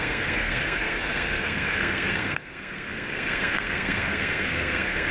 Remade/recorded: remade